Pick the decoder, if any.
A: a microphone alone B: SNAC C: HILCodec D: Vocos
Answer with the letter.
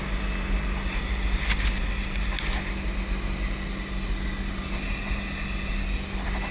A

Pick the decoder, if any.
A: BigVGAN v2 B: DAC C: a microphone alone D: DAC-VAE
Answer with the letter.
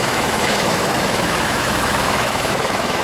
D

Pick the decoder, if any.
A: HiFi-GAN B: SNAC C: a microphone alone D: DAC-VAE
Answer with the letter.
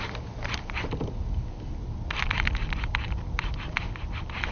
C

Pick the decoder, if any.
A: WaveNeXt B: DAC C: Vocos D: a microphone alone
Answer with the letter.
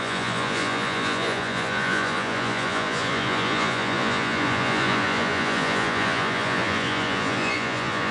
C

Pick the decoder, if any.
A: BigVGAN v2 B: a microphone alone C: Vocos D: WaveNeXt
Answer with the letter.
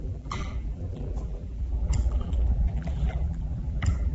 A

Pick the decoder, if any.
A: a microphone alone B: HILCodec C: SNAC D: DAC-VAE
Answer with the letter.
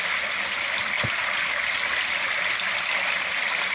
A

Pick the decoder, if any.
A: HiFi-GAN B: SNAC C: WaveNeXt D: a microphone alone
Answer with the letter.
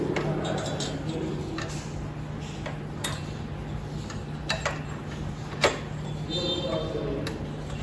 D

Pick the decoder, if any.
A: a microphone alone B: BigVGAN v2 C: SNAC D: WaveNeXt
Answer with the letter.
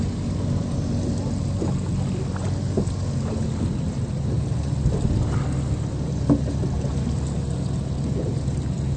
A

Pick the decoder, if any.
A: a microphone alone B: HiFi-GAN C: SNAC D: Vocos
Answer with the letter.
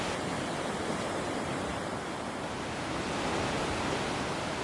A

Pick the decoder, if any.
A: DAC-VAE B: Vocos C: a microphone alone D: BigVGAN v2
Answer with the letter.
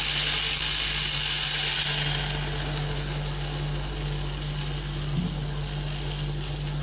C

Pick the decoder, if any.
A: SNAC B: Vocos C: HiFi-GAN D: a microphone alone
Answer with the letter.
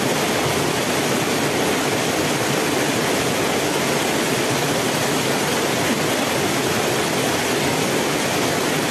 D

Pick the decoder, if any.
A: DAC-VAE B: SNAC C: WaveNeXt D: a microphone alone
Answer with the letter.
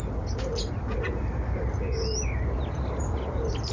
D